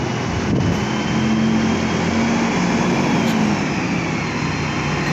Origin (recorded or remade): recorded